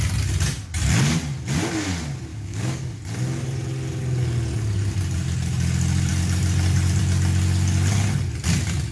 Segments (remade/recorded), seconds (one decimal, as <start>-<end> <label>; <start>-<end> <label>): 0.0-2.3 recorded; 2.3-3.0 remade; 3.0-8.9 recorded